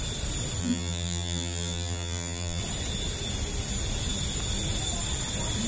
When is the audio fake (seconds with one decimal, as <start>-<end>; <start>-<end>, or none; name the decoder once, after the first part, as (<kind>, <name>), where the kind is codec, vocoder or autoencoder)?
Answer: 0.6-2.6 (vocoder, BigVGAN v2)